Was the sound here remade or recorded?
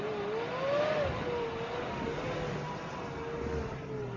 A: recorded